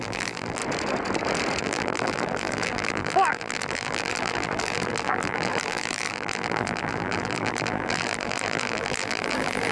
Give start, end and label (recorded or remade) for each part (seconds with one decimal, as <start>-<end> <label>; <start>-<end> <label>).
0.0-0.6 remade; 0.6-1.6 recorded; 1.6-9.7 remade